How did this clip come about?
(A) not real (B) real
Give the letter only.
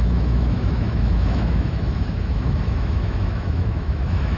A